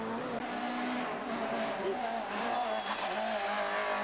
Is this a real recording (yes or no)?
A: yes